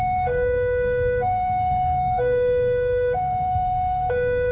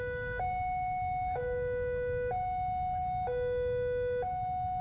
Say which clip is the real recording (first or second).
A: second